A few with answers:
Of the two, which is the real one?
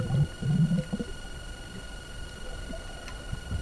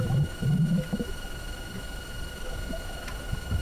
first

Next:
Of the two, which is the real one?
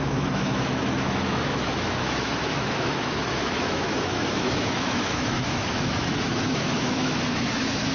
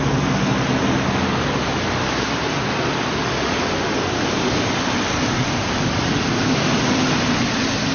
second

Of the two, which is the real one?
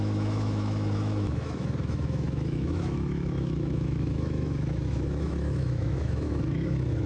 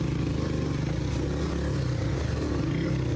second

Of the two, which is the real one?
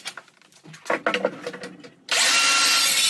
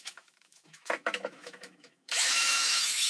first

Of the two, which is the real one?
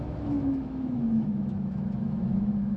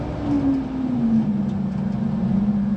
second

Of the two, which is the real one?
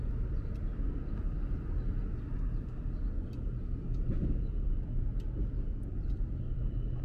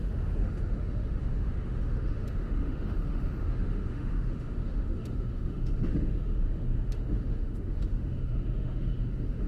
first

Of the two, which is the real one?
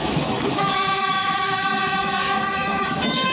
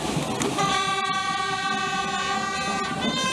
second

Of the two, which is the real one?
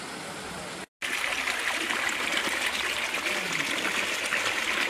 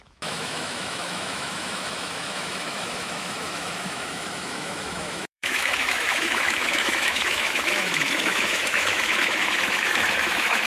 first